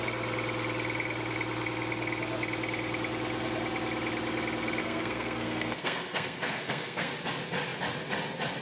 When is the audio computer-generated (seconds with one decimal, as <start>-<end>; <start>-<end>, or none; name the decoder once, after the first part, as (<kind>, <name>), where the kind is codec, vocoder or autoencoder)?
4.8-7.1 (codec, SNAC)